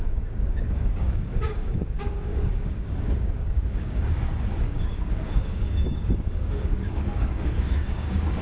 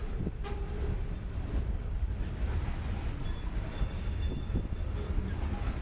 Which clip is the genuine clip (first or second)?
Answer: second